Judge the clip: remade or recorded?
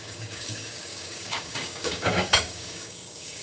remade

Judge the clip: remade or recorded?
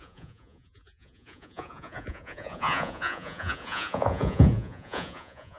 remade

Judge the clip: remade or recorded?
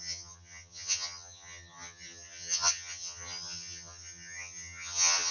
remade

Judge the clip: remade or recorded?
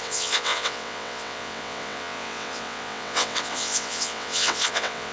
remade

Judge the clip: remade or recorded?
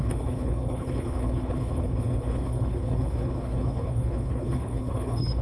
remade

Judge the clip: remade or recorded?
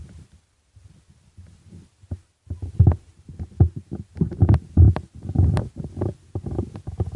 recorded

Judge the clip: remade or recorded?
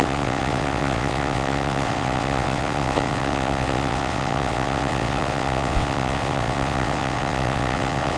remade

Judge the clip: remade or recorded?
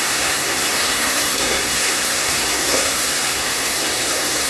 remade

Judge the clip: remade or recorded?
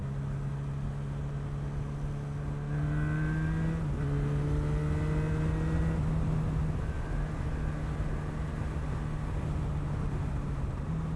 recorded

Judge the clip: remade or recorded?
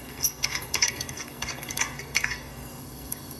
remade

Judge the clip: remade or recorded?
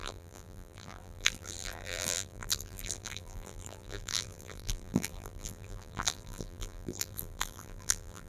remade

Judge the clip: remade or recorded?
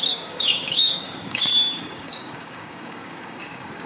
remade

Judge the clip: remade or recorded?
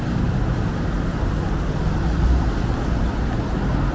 recorded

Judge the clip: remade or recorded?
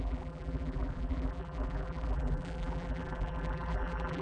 remade